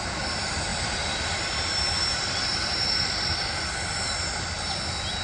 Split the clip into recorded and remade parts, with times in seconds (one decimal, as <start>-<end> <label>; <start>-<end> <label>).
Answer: 0.0-0.7 recorded; 0.7-3.7 remade; 3.7-5.2 recorded